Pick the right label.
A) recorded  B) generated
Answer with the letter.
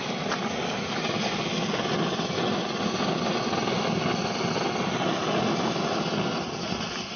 A